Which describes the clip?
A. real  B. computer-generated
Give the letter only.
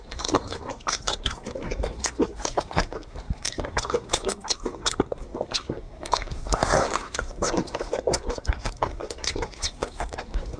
B